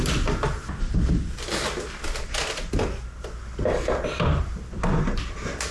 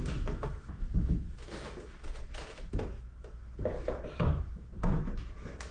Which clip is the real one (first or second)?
first